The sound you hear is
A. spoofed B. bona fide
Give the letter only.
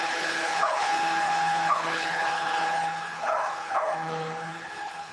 A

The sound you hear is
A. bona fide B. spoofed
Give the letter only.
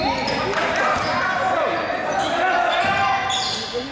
A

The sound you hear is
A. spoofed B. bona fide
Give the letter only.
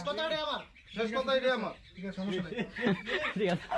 B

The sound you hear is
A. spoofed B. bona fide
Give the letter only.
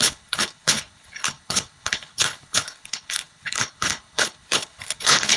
A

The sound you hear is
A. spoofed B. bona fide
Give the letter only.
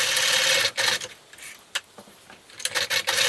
B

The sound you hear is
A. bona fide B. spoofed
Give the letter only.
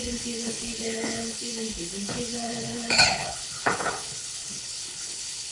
B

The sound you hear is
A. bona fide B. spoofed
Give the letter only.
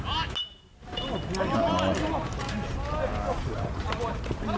A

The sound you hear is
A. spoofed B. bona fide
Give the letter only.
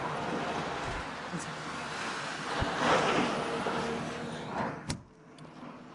B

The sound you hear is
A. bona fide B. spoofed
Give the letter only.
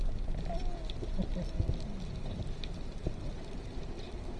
A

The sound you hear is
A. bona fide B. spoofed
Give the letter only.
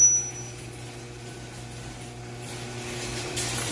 A